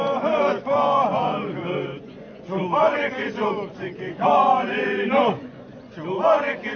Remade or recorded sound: remade